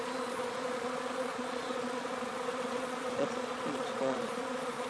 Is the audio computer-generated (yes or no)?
yes